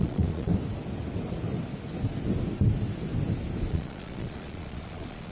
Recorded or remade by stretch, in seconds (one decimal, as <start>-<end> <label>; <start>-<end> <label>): 0.0-0.5 remade; 0.5-3.7 recorded; 3.7-5.3 remade